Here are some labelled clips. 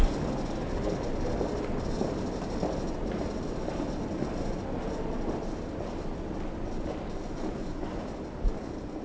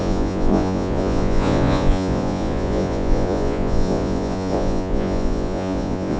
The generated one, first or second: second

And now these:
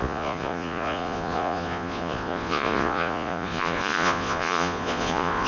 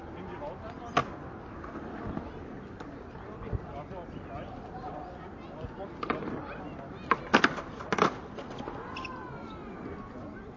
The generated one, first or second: first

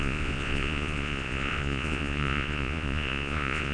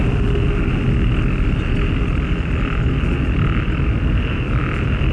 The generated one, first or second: first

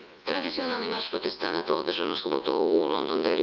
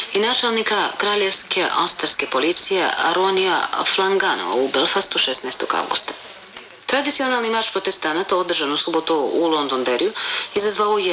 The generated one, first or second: first